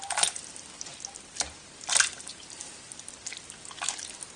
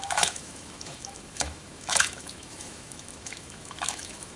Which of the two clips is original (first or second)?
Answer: first